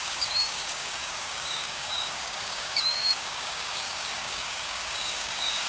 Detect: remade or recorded remade